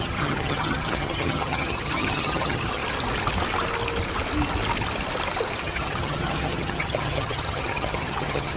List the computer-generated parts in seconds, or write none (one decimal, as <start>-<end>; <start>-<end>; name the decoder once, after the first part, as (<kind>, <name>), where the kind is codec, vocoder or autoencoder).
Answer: 0.0-2.8 (vocoder, HiFi-GAN); 5.6-8.6